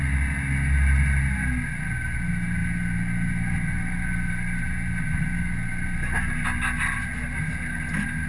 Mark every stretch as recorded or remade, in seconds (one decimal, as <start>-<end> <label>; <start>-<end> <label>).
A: 0.0-8.3 recorded